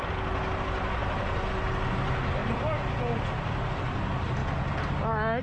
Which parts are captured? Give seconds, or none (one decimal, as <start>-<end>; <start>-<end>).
0.0-5.4